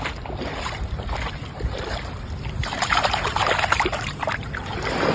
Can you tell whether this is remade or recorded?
recorded